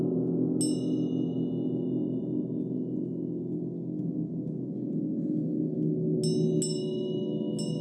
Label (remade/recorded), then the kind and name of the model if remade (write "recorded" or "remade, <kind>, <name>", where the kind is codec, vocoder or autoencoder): recorded